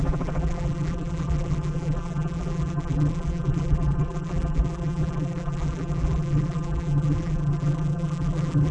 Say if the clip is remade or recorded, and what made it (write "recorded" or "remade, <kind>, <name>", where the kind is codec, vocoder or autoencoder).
remade, vocoder, BigVGAN v2